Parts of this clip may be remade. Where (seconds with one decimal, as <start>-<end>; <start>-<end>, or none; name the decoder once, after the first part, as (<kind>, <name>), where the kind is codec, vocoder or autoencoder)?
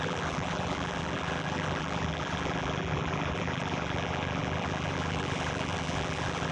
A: 0.0-6.5 (vocoder, BigVGAN v2)